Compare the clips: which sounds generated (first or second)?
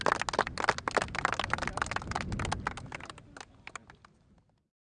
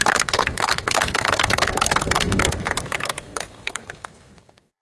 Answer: second